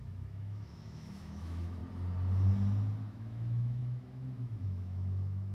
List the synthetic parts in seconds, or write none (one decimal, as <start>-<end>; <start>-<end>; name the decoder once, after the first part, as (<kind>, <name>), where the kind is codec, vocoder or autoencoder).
0.0-1.8 (autoencoder, DAC-VAE); 3.1-5.5